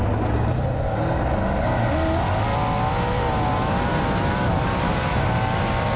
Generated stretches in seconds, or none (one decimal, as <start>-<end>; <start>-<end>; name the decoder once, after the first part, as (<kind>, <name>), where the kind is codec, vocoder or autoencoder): none